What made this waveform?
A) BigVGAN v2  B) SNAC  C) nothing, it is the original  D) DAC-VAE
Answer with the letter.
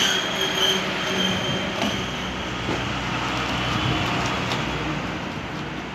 C